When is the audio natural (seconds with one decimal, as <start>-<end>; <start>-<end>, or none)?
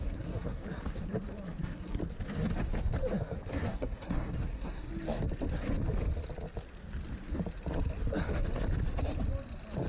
0.6-1.6; 2.0-3.5; 4.9-9.9